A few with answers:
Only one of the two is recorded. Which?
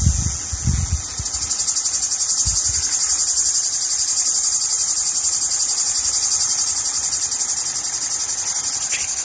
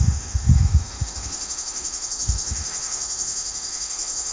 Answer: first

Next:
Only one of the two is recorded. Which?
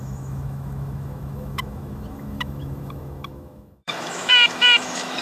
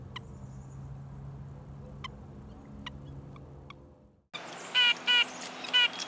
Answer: second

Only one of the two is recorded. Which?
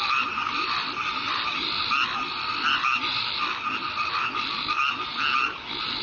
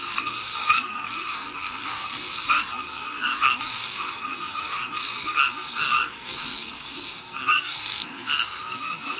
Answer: first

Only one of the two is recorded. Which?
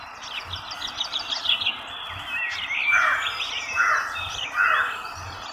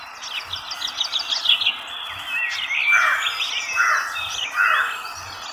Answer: second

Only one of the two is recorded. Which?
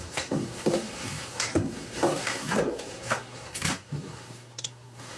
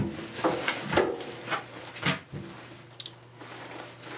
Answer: second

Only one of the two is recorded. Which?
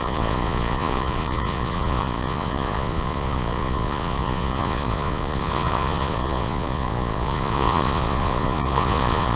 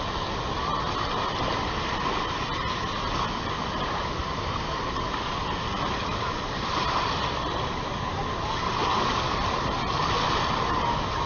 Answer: second